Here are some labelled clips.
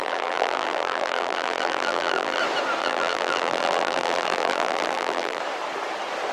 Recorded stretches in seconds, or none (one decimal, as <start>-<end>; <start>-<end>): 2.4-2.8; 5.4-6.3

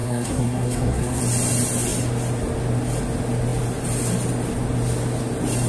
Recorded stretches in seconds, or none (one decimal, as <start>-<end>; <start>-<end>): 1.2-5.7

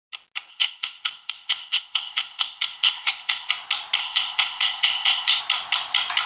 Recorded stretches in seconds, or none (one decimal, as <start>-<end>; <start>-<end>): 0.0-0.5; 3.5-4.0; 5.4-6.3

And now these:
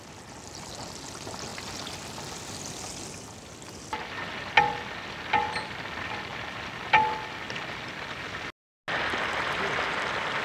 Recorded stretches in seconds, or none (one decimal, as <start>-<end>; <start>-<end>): 0.0-10.4

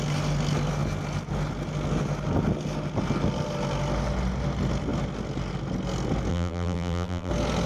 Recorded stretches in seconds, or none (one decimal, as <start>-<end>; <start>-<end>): 0.0-6.3; 7.3-7.7

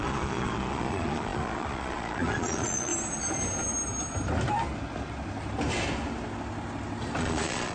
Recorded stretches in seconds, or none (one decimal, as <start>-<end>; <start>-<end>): 2.9-7.2